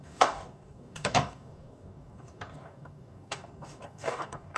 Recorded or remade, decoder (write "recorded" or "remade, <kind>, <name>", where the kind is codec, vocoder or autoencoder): remade, codec, DAC